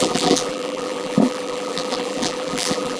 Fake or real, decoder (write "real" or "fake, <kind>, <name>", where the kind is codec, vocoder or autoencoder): fake, vocoder, BigVGAN v2